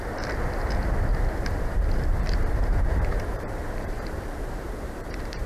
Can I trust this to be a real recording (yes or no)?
no